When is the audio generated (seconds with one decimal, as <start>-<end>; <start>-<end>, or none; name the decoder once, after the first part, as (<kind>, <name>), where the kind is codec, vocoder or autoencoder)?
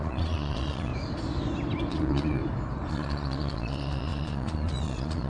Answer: 0.0-0.9 (vocoder, Vocos); 1.9-2.4; 2.9-5.3